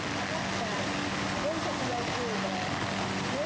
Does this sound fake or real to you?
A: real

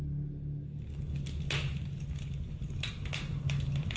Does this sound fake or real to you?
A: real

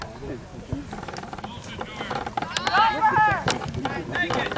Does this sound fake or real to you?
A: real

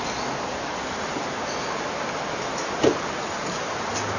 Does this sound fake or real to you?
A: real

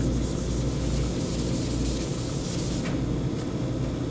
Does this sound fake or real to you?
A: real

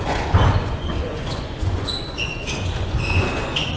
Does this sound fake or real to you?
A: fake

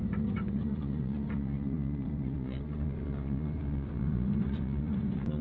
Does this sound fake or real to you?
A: fake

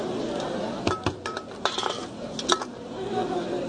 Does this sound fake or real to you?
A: real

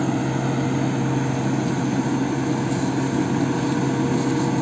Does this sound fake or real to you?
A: real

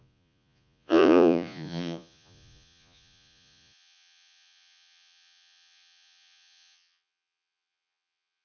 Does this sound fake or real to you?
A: fake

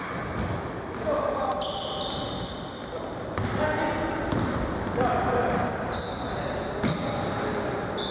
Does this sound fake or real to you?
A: real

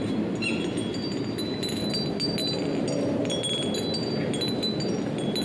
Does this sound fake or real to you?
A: real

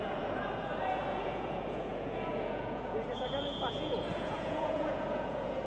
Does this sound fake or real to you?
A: fake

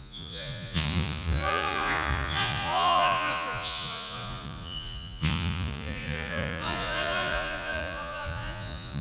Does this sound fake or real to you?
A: fake